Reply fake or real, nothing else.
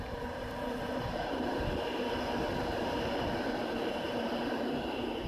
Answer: fake